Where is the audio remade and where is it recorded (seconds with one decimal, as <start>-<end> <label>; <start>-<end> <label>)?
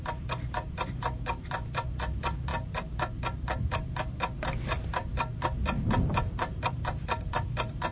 0.0-7.9 remade